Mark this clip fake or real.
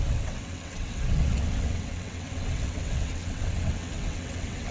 fake